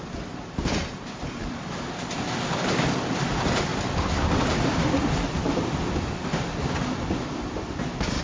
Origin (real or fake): fake